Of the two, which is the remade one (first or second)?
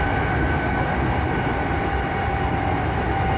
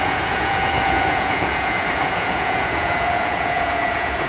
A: second